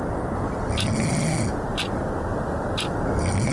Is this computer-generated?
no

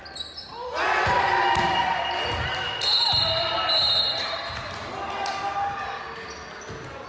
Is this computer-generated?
no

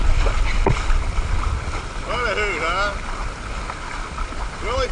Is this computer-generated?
no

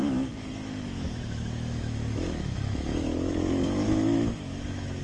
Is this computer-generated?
yes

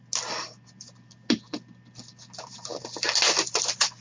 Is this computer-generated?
no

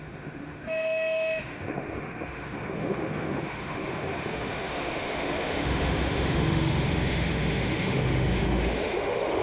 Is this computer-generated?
yes